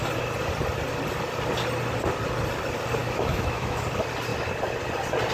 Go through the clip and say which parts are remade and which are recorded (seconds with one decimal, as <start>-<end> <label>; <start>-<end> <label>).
0.0-3.0 recorded; 3.0-3.8 remade; 3.8-5.3 recorded